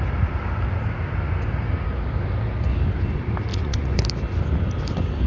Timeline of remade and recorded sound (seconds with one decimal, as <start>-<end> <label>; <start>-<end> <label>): 0.0-3.5 recorded; 3.5-4.0 remade; 4.0-5.3 recorded